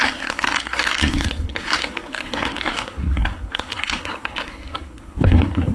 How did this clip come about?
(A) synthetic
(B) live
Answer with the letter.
A